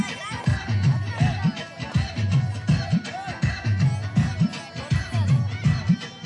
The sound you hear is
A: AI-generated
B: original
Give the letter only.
B